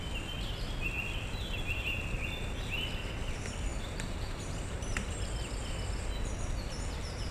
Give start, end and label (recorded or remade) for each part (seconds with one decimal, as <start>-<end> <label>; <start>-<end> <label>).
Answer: 0.0-3.7 recorded; 3.7-5.2 remade; 5.2-7.3 recorded